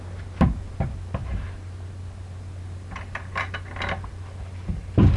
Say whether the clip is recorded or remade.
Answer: recorded